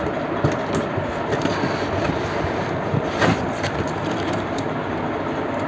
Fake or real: real